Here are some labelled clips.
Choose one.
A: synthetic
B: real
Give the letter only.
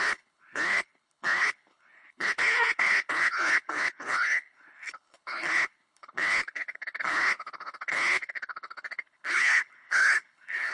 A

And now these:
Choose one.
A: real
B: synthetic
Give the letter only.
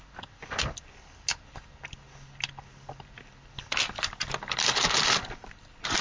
A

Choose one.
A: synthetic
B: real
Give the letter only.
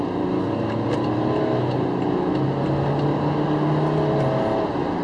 B